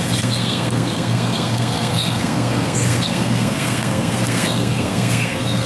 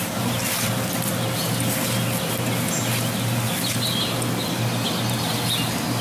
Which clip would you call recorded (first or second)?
second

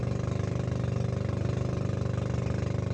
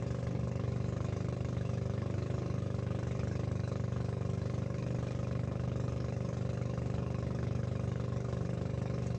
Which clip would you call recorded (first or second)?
first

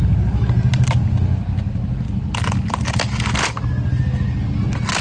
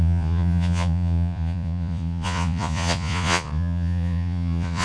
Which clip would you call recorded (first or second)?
first